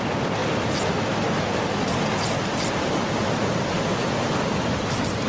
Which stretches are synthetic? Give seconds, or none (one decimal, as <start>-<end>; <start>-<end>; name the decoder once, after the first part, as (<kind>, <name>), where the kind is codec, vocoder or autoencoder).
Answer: none